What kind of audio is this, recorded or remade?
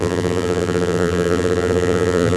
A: remade